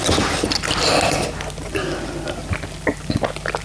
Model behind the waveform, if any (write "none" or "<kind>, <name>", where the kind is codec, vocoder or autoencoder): none